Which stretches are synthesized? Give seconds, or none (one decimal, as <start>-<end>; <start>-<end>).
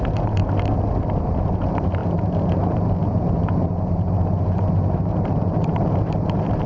0.0-0.4; 1.2-6.7